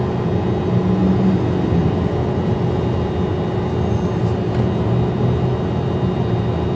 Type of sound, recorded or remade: recorded